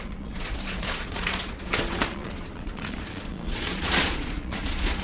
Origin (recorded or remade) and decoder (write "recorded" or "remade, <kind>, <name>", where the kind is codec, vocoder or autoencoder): remade, vocoder, Vocos